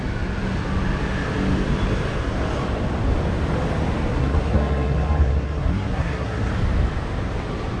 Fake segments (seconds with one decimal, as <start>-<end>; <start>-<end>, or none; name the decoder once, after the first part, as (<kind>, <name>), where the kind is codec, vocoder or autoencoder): 4.1-6.5 (codec, SNAC)